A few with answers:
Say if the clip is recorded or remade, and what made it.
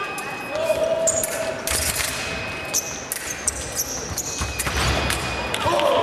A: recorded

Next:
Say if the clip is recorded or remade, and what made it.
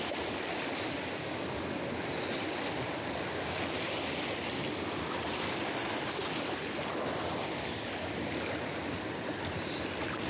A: recorded